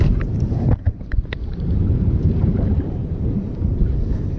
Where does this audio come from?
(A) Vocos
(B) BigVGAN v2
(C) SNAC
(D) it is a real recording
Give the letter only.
B